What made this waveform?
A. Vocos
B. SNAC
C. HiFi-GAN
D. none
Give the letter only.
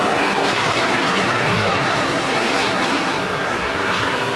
B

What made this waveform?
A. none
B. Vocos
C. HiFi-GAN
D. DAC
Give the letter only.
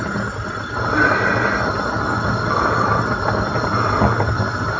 A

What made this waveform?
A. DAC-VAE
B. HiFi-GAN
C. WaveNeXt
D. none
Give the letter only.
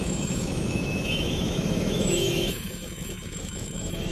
A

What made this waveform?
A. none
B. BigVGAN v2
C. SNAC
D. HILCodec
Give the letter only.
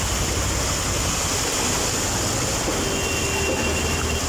A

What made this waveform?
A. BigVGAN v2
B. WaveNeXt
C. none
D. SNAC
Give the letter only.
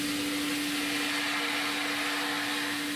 C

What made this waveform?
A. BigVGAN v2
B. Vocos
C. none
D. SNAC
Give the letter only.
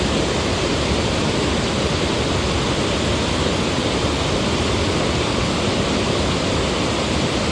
C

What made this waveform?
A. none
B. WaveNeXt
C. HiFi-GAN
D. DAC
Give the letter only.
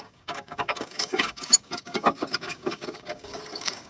D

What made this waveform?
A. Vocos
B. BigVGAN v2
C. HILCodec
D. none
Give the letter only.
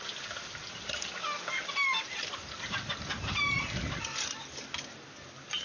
D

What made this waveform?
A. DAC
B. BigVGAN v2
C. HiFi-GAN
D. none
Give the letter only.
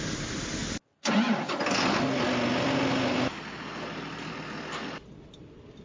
D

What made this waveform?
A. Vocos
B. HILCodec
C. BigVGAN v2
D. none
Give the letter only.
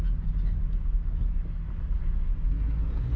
D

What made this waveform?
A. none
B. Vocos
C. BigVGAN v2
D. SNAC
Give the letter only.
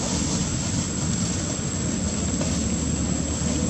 A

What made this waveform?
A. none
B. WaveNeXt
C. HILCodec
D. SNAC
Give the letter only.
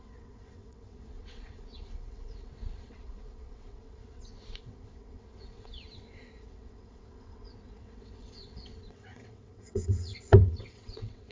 B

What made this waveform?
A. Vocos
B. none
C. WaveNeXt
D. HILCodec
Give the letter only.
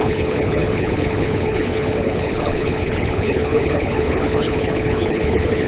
D